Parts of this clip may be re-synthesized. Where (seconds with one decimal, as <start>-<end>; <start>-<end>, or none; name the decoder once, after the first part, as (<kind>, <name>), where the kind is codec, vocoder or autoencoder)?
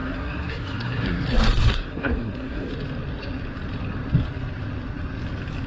0.0-2.7 (codec, SNAC)